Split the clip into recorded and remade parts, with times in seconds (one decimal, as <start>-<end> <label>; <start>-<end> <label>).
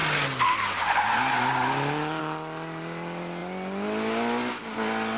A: 0.0-5.2 recorded